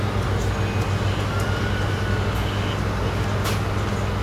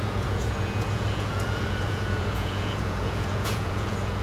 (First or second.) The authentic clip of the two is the first